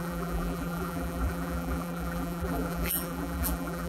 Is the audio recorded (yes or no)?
no